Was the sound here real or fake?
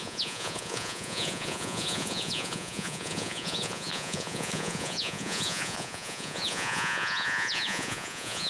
fake